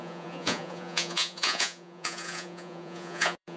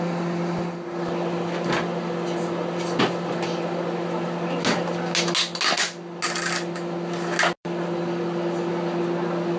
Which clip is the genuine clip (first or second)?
second